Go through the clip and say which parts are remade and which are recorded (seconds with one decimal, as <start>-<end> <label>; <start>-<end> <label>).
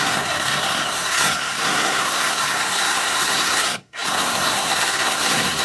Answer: 0.0-5.6 remade